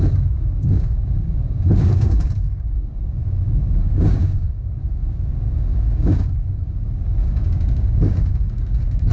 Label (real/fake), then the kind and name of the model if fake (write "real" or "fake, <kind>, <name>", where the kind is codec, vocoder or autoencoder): fake, codec, DAC